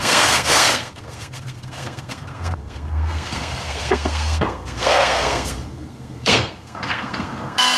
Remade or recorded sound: remade